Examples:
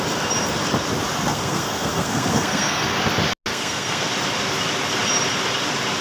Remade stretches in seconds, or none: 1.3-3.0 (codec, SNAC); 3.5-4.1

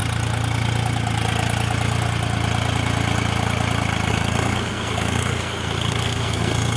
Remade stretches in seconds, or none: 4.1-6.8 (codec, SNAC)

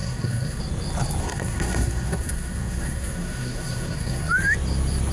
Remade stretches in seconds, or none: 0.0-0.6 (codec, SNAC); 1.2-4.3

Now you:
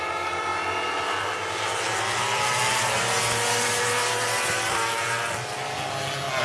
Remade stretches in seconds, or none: none